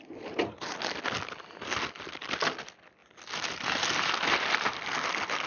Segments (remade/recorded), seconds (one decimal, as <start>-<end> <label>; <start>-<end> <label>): 0.0-5.5 recorded